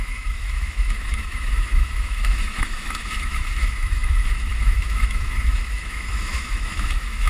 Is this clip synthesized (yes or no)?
yes